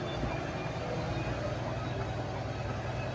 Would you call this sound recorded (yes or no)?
yes